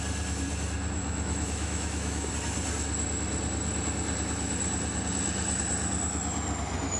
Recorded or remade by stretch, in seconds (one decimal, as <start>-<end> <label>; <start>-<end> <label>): 0.0-1.0 recorded; 1.0-2.3 remade; 2.3-7.0 recorded